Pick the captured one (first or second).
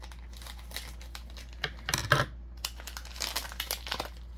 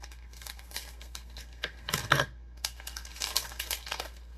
first